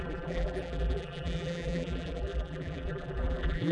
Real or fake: fake